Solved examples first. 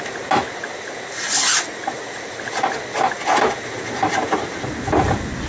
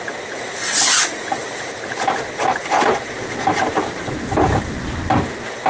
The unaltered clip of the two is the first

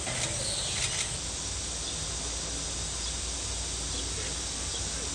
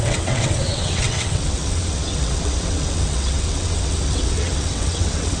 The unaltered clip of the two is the first